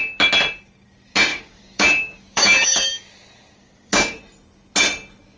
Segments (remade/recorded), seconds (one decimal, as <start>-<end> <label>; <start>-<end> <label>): 0.0-1.3 recorded; 1.3-2.9 remade; 2.9-3.6 recorded; 3.6-4.2 remade; 4.2-5.4 recorded